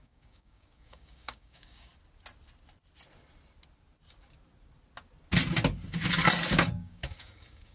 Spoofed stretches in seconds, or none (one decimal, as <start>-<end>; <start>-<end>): 0.0-1.9; 6.5-7.7